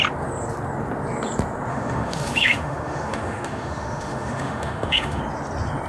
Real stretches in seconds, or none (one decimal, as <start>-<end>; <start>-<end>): 0.0-1.7; 5.2-5.9